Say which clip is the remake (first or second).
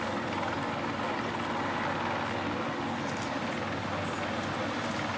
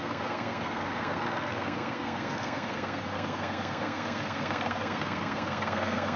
second